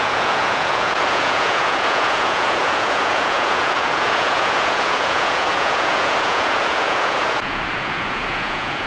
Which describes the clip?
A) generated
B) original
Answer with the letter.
A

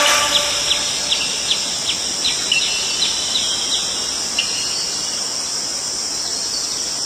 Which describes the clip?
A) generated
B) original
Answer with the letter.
B